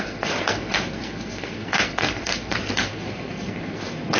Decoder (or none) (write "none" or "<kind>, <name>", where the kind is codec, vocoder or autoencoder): codec, SNAC